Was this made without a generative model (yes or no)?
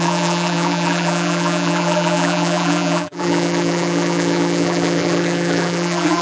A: no